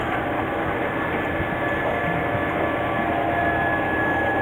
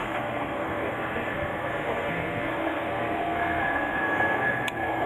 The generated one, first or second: second